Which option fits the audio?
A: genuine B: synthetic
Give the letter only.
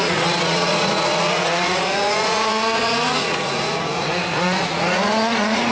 B